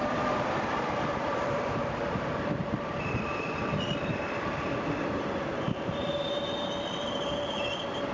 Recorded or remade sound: remade